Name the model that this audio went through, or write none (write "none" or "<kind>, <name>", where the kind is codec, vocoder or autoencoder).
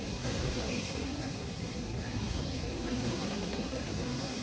codec, SNAC